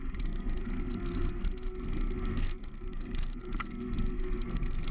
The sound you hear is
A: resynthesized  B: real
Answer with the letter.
A